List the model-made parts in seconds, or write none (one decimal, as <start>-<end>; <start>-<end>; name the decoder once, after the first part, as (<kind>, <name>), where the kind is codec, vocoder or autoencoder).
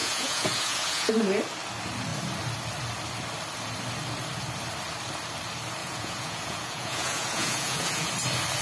0.0-1.1 (vocoder, Vocos); 5.8-8.1